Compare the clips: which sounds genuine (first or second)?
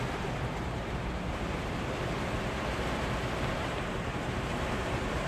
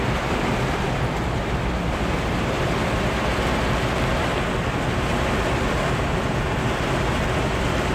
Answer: second